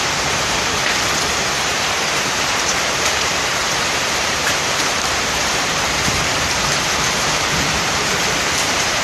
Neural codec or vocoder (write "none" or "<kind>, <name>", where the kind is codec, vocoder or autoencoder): vocoder, BigVGAN v2